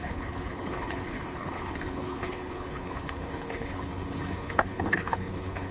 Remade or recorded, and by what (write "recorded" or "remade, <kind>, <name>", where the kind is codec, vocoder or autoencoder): remade, codec, HILCodec